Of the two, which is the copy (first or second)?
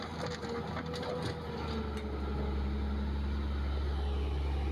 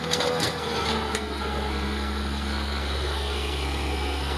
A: second